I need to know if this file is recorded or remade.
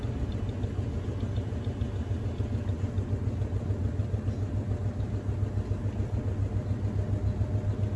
recorded